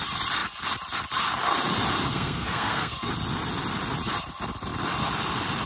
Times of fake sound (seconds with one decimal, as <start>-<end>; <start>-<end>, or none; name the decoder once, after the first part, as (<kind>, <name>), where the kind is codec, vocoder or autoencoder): 2.1-3.1 (codec, SNAC)